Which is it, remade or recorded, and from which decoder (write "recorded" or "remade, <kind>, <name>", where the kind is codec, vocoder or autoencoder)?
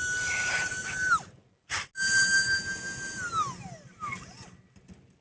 recorded